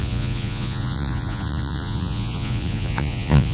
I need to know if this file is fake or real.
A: fake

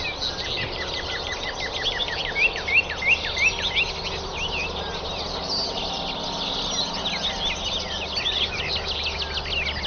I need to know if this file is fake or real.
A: real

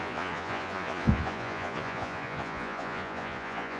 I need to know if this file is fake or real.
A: fake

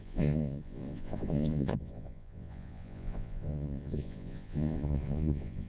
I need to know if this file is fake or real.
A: fake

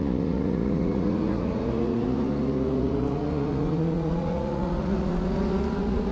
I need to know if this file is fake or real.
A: fake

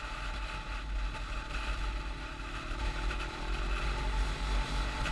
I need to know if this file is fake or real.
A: real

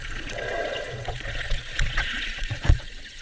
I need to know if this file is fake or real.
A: fake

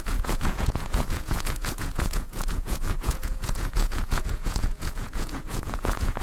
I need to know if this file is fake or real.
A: fake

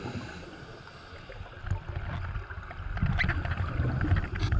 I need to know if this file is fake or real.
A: real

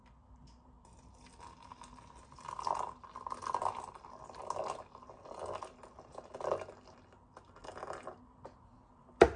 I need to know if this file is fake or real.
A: real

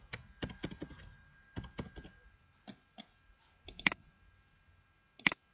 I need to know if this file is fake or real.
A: real